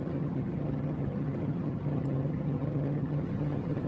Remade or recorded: remade